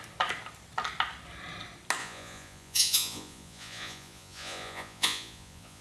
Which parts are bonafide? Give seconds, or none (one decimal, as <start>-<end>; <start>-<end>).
0.0-2.0